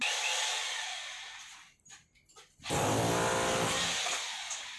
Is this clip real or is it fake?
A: real